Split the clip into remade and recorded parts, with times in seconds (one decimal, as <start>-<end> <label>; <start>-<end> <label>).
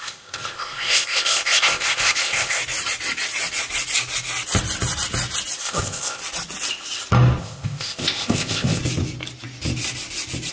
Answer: 0.0-2.6 remade; 2.6-5.6 recorded; 5.6-6.2 remade; 6.2-7.4 recorded; 7.4-8.8 remade; 8.8-10.5 recorded